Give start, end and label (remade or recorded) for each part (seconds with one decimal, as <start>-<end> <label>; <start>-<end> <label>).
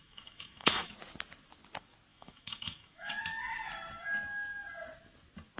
0.0-0.9 remade; 0.9-2.1 recorded; 2.1-3.1 remade; 3.1-5.6 recorded